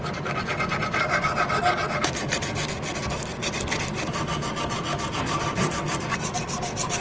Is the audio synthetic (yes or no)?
no